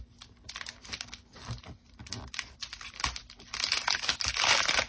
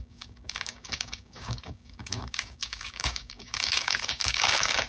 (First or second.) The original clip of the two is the first